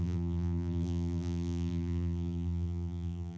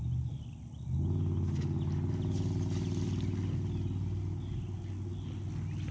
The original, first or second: second